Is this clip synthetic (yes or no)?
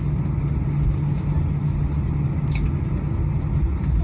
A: no